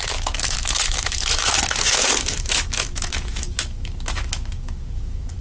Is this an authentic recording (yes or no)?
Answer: no